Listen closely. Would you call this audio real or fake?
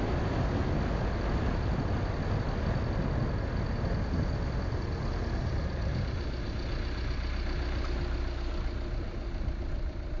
real